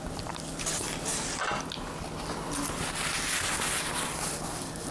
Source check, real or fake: real